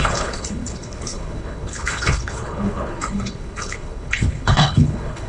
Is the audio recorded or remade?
remade